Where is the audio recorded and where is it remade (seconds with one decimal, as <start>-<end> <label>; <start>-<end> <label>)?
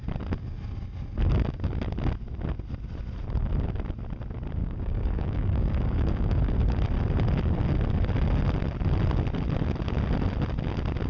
0.0-4.6 recorded; 4.6-6.4 remade; 6.4-11.1 recorded